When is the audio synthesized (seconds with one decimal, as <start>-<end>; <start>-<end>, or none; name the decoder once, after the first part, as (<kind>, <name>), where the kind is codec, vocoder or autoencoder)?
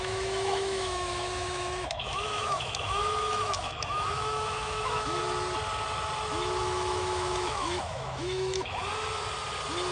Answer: 0.0-5.2 (autoencoder, DAC-VAE); 6.6-8.8